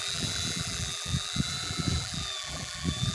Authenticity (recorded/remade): remade